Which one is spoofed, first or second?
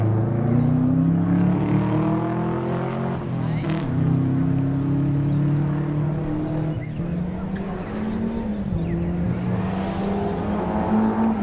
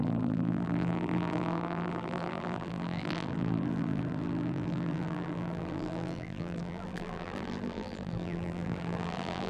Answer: second